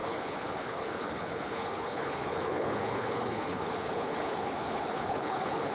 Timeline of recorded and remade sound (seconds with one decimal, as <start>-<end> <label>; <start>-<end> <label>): 0.0-5.7 remade